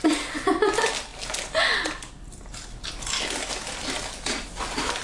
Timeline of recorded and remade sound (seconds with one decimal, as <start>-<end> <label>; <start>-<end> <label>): 0.0-5.0 recorded

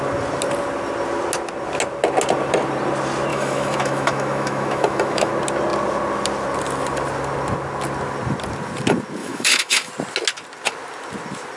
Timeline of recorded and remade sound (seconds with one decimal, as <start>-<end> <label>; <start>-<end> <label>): 0.0-3.3 recorded; 3.3-5.3 remade; 5.3-9.2 recorded; 9.2-9.9 remade; 9.9-11.6 recorded

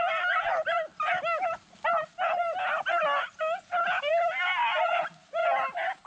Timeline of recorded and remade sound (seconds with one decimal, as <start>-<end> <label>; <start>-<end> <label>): 0.0-6.1 recorded